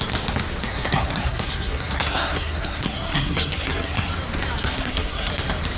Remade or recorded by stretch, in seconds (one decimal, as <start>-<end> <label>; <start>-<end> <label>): 0.0-0.6 recorded; 0.6-4.1 remade; 4.1-4.6 recorded; 4.6-5.3 remade; 5.3-5.8 recorded